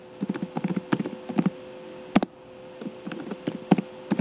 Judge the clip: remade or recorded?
recorded